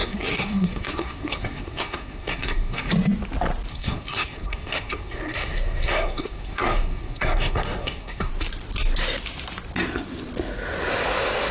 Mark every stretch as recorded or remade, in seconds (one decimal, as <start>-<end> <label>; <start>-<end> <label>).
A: 0.0-2.9 remade; 2.9-3.7 recorded; 3.7-8.3 remade; 8.3-11.5 recorded